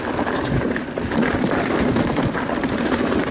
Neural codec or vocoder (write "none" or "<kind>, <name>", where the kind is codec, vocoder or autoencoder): none